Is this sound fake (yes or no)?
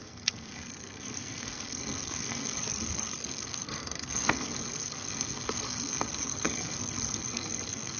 yes